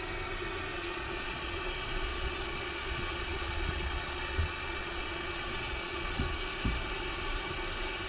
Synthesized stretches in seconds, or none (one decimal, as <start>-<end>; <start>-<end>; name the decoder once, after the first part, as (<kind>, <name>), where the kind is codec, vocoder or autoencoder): 0.7-1.6 (vocoder, Vocos); 2.1-6.4